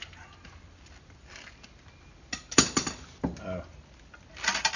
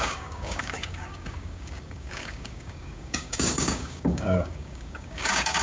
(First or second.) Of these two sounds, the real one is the first